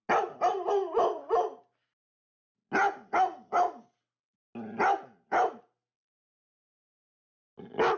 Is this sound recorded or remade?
recorded